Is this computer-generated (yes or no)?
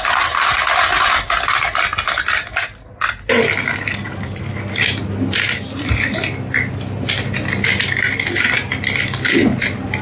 no